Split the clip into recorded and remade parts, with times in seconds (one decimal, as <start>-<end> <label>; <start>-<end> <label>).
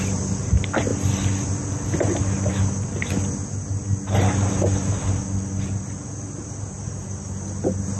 0.0-8.0 recorded